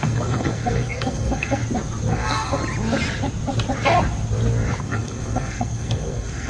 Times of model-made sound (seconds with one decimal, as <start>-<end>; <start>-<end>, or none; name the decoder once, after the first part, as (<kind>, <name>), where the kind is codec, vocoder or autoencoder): 0.0-1.6 (codec, SNAC); 2.1-2.6; 4.8-6.5